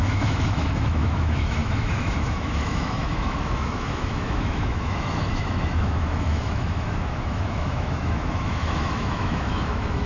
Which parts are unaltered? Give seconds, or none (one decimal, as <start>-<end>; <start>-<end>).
none